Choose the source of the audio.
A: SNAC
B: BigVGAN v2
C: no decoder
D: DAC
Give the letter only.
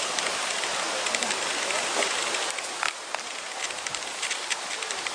C